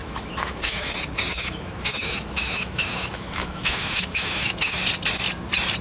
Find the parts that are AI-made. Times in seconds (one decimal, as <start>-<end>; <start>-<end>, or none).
0.0-0.9; 1.3-4.8